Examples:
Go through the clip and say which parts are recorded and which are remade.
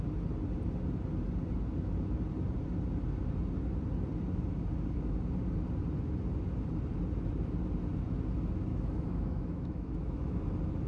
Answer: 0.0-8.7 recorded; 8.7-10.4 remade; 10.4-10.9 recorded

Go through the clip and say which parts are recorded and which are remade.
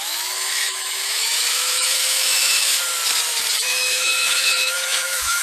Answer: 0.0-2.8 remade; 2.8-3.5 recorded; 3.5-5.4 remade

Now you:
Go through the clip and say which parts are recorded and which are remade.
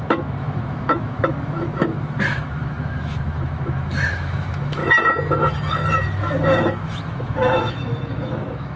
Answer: 0.0-4.8 remade; 4.8-5.9 recorded; 5.9-8.8 remade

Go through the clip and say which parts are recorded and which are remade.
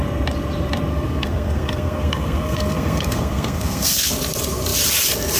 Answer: 0.0-0.9 recorded; 0.9-4.1 remade; 4.1-5.4 recorded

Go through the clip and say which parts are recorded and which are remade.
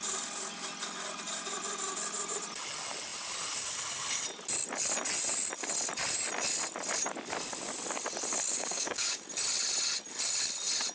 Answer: 0.0-8.5 recorded; 8.5-9.2 remade; 9.2-10.9 recorded